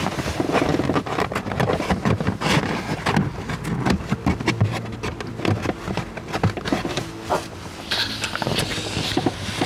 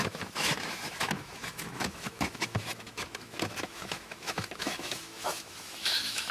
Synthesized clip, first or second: second